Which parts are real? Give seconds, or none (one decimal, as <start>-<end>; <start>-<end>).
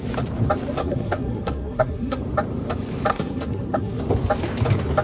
0.0-0.8; 2.2-3.1; 4.0-5.0